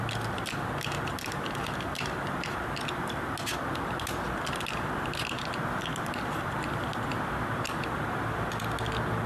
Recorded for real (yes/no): yes